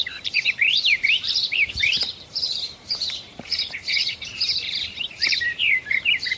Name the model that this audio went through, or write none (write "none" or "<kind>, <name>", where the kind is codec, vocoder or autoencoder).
vocoder, BigVGAN v2